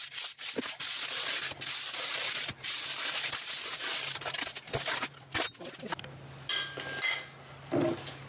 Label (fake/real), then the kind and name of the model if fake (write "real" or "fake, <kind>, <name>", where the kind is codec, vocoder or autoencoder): real